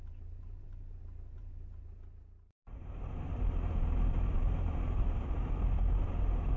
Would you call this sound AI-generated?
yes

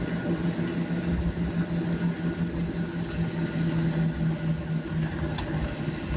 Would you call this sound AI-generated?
no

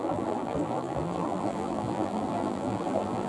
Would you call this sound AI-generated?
yes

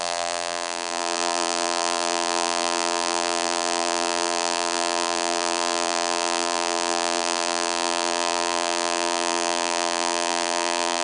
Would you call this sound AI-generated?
yes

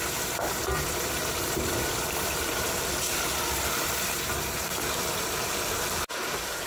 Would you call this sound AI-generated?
yes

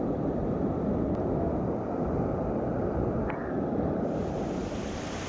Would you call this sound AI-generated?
no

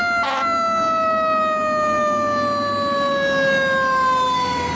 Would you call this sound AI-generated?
no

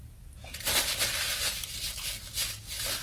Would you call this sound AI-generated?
no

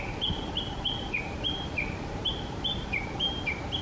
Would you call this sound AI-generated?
yes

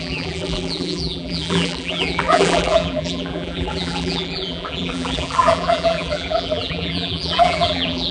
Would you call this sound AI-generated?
yes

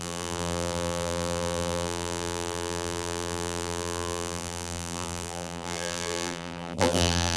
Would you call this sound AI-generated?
yes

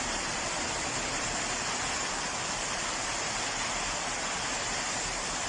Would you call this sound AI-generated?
yes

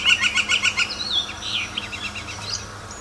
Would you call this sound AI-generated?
no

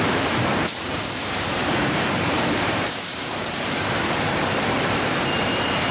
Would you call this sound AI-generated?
yes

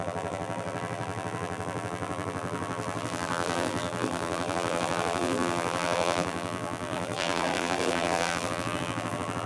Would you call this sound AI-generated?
yes